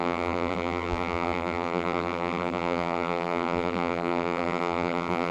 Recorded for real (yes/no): no